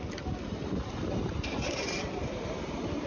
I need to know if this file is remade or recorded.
recorded